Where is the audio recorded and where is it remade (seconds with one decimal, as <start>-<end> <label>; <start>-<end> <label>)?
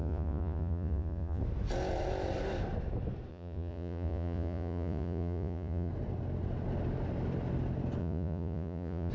0.0-1.4 remade; 1.4-3.3 recorded; 3.3-5.9 remade; 5.9-8.0 recorded; 8.0-9.1 remade